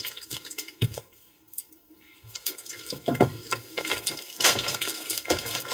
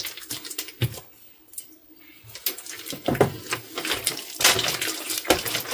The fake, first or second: first